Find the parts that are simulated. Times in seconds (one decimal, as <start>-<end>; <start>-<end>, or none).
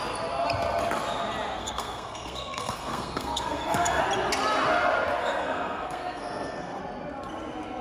1.6-4.0; 5.2-6.8